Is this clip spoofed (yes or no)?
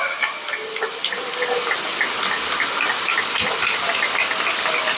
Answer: no